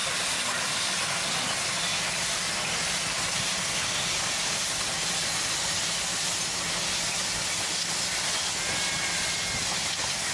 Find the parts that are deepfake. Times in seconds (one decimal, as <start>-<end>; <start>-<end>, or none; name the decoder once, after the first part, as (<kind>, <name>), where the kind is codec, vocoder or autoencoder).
none